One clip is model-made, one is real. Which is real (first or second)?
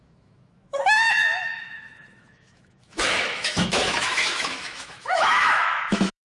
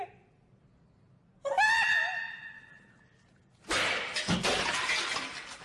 second